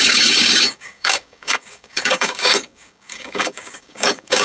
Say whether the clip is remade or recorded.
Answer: remade